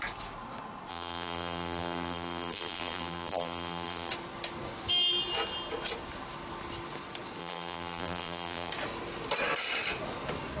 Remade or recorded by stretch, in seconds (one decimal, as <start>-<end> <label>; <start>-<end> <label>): 0.0-0.9 recorded; 0.9-4.1 remade; 4.1-7.4 recorded; 7.4-8.7 remade; 8.7-10.6 recorded